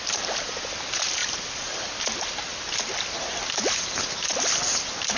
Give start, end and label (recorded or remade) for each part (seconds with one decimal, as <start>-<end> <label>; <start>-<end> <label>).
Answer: 0.0-5.2 recorded